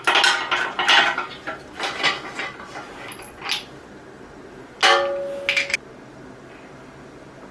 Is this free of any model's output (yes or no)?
yes